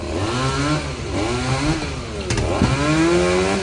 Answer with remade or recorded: recorded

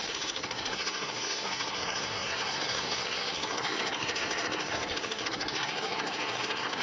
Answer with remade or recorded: remade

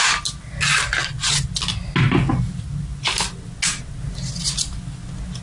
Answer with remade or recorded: recorded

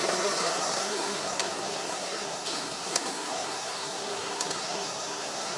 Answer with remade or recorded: remade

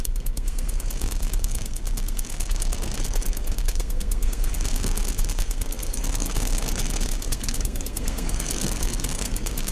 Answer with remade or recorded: remade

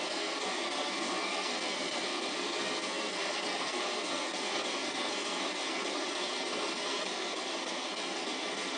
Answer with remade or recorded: remade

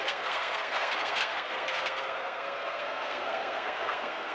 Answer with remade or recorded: remade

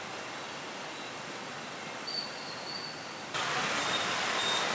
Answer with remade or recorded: recorded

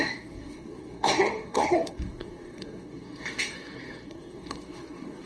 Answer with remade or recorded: remade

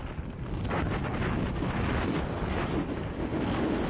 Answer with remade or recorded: recorded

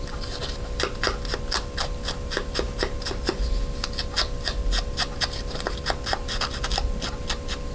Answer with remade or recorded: recorded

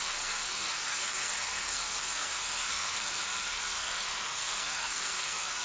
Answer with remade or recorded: remade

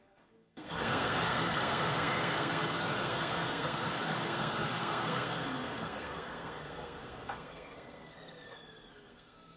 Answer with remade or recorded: remade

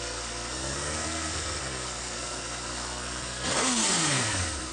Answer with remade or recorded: remade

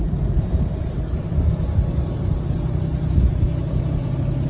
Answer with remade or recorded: recorded